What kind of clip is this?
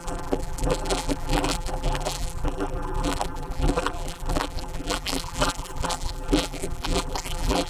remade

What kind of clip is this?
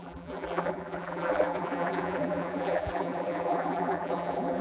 remade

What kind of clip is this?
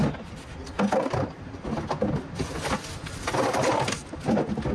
recorded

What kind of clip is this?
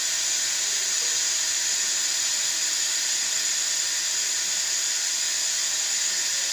recorded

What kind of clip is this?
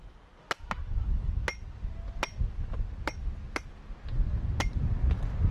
recorded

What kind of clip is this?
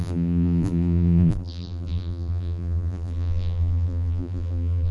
remade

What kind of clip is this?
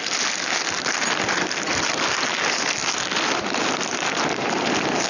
remade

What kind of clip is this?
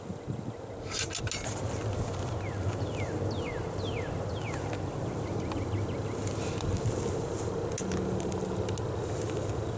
recorded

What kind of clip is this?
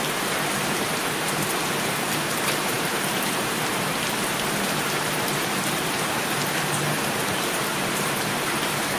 remade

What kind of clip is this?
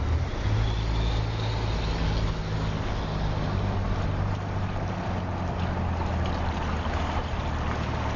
recorded